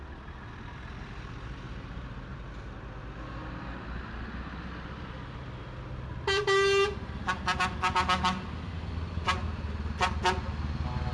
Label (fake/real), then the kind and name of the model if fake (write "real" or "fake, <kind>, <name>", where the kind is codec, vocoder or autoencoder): real